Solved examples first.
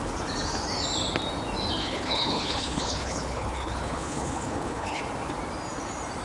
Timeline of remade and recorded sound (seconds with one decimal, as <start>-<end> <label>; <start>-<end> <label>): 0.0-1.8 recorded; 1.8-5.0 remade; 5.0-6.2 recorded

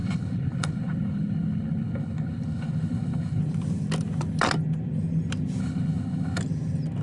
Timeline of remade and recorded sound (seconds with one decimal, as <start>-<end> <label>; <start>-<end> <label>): 0.0-3.4 remade; 3.4-5.6 recorded; 5.6-6.4 remade; 6.4-7.0 recorded

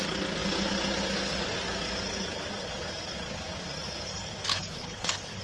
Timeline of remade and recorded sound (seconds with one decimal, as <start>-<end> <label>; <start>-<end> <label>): 0.0-4.5 recorded; 4.5-5.4 remade